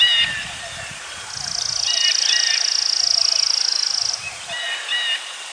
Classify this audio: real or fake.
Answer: real